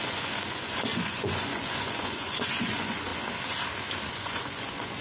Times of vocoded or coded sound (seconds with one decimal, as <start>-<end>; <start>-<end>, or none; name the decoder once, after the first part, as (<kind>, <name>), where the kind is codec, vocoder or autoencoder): 0.0-3.1 (vocoder, Vocos); 4.1-5.0